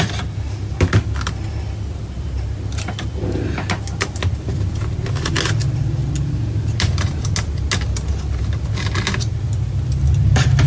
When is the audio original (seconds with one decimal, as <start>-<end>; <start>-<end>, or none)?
0.0-10.7